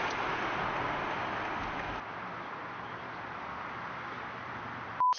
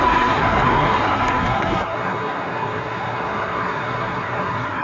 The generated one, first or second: second